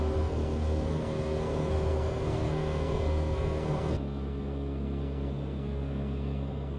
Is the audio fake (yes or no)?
yes